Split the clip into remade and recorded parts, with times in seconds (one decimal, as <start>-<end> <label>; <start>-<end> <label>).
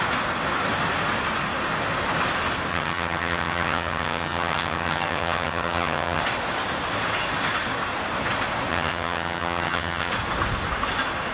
0.0-2.7 recorded; 2.7-6.2 remade; 6.2-8.7 recorded; 8.7-10.1 remade; 10.1-11.3 recorded